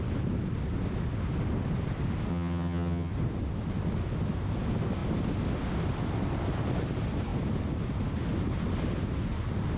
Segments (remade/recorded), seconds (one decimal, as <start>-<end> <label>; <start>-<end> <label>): 0.0-2.3 recorded; 2.3-3.1 remade; 3.1-9.8 recorded